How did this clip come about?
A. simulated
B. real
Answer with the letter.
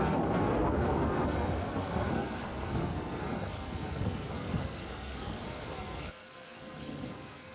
A